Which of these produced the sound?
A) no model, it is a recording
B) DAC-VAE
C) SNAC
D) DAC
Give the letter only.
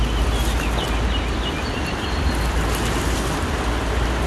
A